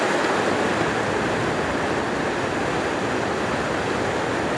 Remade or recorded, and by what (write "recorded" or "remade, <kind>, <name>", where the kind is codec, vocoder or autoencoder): recorded